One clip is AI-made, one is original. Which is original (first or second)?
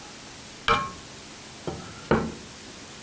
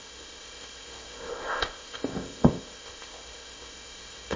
first